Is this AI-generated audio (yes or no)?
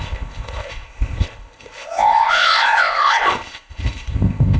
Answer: yes